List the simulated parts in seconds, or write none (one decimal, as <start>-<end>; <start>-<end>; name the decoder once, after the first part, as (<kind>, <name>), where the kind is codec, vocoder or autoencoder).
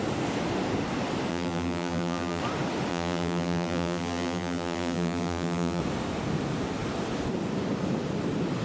1.3-2.4 (vocoder, BigVGAN v2); 2.9-5.8